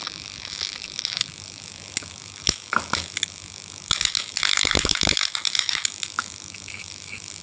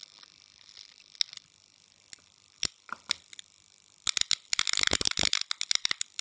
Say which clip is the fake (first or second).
first